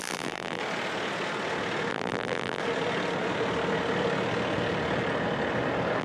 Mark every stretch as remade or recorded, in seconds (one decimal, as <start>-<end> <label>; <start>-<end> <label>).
0.0-0.6 remade; 0.6-1.9 recorded; 1.9-2.6 remade; 2.6-6.0 recorded